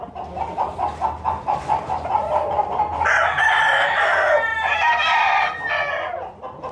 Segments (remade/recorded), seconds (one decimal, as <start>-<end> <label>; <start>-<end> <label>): 0.0-6.7 recorded